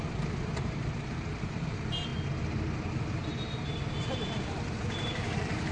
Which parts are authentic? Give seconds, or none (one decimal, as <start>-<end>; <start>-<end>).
2.1-2.8